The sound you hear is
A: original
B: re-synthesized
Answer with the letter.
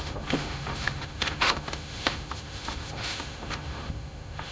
B